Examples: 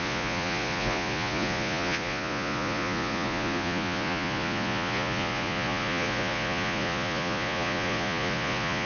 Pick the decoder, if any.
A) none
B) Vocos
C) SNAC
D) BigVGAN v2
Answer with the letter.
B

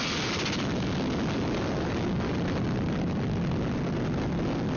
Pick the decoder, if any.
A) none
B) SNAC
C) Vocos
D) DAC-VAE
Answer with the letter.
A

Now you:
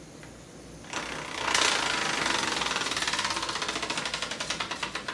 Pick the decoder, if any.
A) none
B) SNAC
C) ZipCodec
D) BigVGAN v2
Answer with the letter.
A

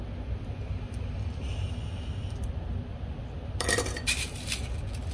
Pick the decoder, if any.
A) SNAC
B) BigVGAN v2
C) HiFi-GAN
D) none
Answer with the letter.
D